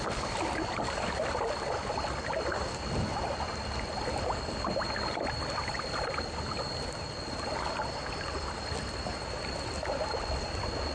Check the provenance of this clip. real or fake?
real